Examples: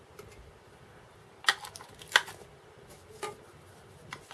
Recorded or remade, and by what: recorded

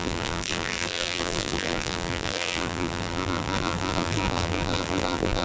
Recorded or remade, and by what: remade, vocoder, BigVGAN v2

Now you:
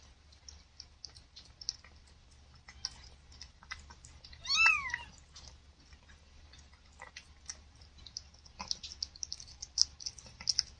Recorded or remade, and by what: recorded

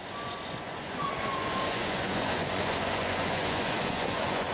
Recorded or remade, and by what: remade, vocoder, Vocos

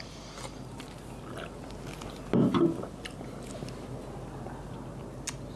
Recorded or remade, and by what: recorded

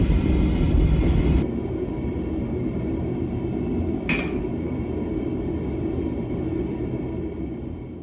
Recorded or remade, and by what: recorded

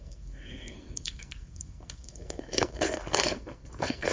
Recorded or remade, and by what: remade, codec, SNAC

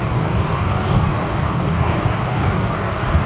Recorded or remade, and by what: remade, codec, DAC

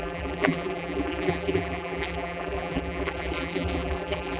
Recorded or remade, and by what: remade, vocoder, BigVGAN v2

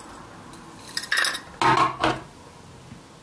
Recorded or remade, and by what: recorded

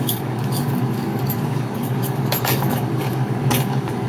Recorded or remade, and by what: remade, codec, DAC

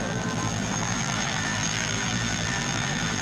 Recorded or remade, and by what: remade, vocoder, BigVGAN v2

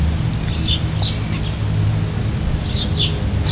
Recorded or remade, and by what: recorded